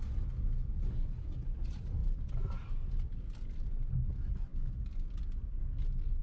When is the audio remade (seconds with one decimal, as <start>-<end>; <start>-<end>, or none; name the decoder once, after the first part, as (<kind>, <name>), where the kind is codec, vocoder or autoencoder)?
none

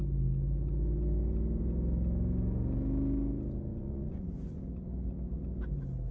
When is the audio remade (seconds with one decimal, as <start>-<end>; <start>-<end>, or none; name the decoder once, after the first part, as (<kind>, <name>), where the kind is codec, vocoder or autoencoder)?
3.7-4.6 (vocoder, Vocos)

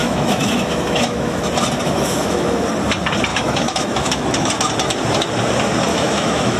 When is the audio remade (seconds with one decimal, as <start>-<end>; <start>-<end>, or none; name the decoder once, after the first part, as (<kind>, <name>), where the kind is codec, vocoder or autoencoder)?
0.0-1.4 (autoencoder, DAC-VAE); 1.8-2.6; 3.3-4.5; 5.9-6.6

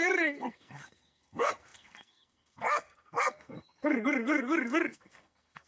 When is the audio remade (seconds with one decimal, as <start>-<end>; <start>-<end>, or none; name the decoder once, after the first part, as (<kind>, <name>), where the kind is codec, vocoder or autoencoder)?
0.0-5.7 (codec, SNAC)

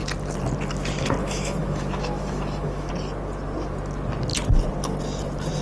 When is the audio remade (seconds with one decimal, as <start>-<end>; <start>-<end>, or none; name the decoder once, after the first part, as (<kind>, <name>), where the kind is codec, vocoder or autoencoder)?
1.2-2.9 (autoencoder, DAC-VAE)

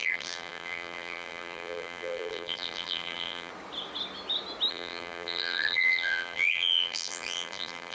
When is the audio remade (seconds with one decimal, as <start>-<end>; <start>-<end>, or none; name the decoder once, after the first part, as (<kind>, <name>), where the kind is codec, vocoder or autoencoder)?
0.0-3.5 (vocoder, BigVGAN v2); 4.7-7.9

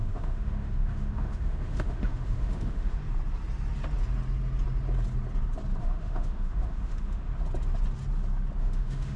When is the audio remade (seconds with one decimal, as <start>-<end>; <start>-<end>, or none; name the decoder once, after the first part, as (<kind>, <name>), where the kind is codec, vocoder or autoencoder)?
0.0-3.0 (autoencoder, DAC-VAE); 5.8-7.3; 8.6-9.2

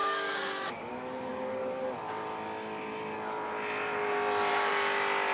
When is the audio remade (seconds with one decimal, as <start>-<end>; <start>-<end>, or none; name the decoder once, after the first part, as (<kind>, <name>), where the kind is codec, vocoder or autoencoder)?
0.0-0.9 (codec, DAC)